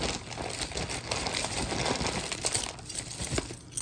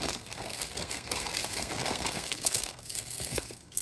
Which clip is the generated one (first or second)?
second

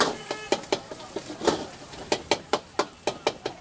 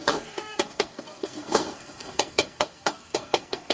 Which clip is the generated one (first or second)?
second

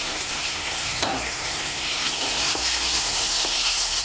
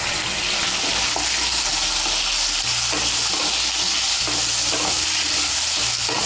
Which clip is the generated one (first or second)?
first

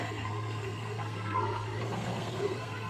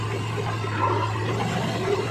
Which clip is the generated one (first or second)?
first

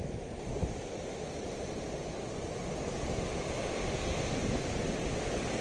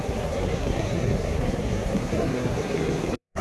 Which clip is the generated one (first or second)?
second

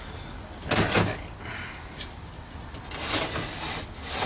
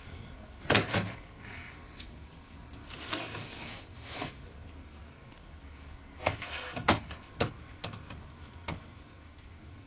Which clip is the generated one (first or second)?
second